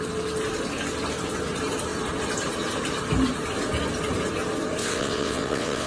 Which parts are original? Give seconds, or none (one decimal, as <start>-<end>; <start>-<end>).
0.0-4.8